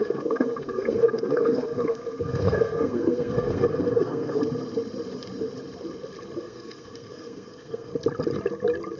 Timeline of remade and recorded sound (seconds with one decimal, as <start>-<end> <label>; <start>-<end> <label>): 0.0-4.4 remade; 4.4-6.4 recorded; 6.4-7.9 remade; 7.9-9.0 recorded